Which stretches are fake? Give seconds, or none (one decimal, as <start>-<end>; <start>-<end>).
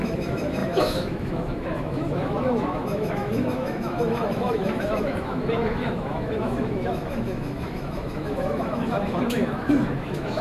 0.0-10.4